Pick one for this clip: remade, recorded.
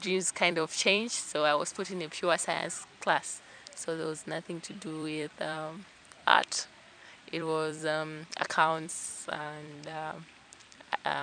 remade